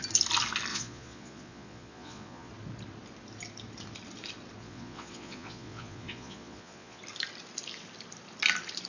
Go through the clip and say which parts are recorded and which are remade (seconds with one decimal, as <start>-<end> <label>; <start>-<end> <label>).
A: 0.0-0.7 recorded; 0.7-2.5 remade; 2.5-4.6 recorded; 4.6-7.0 remade; 7.0-8.9 recorded